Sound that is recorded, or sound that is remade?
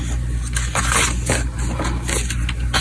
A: recorded